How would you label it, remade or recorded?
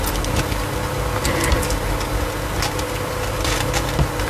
recorded